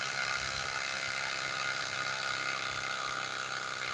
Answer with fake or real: real